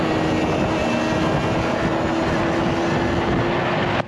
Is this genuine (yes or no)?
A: yes